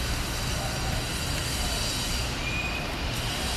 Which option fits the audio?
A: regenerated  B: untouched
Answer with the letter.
B